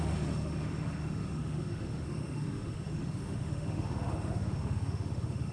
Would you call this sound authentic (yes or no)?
no